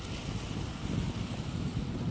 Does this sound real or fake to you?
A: real